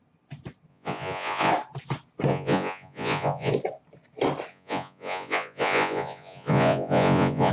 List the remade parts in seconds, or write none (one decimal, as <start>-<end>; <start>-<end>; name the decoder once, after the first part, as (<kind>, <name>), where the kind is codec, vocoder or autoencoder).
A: 0.7-1.5 (vocoder, Vocos); 2.3-3.5; 4.5-7.5